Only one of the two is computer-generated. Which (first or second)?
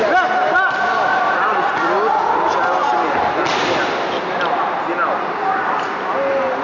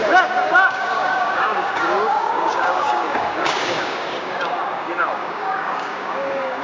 second